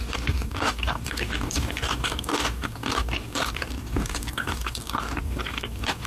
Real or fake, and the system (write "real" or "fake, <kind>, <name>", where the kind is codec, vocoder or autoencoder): fake, codec, DAC